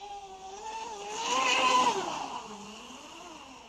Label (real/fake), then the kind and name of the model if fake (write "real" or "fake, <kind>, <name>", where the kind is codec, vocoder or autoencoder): real